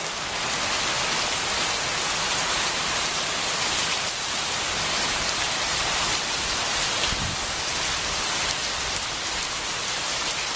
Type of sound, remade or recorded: recorded